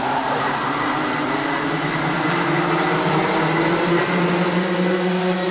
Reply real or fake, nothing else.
real